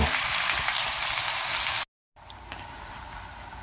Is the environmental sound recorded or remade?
recorded